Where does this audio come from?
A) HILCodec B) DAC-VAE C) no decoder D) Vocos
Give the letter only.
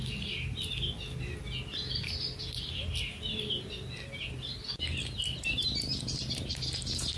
C